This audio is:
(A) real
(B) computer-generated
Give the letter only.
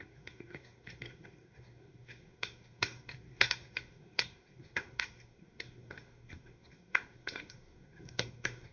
B